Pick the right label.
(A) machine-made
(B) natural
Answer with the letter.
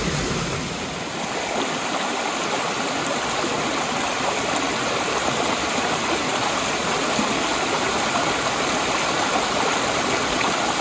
B